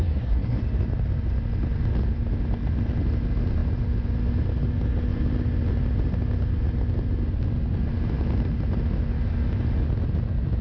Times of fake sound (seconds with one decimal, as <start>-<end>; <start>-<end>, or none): 0.0-0.6